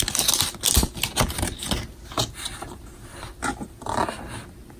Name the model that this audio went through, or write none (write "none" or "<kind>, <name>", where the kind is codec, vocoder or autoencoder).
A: none